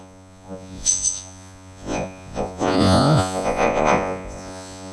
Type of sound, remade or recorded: remade